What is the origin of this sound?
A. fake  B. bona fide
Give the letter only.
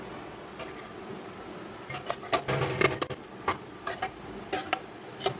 B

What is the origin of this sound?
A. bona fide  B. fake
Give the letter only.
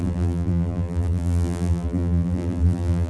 B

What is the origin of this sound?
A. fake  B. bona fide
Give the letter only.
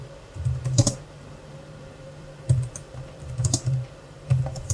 A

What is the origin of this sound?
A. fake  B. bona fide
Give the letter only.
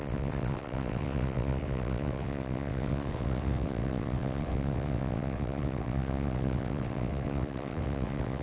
A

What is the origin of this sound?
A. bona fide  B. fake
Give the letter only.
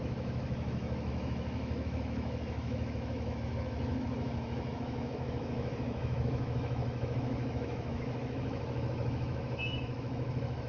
B